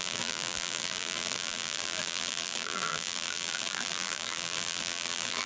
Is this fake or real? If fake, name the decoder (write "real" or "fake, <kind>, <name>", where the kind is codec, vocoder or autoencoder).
fake, vocoder, BigVGAN v2